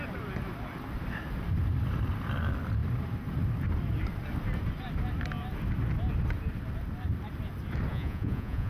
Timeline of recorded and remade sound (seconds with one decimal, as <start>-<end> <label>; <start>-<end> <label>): 0.0-7.9 recorded; 7.9-8.7 remade